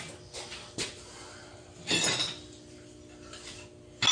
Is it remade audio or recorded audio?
recorded